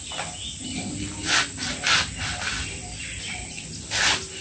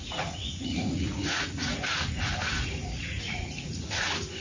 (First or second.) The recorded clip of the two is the first